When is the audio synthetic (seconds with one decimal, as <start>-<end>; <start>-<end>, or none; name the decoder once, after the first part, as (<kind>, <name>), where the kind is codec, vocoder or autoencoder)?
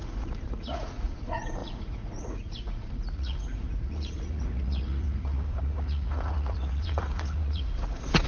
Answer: 0.0-8.3 (vocoder, Vocos)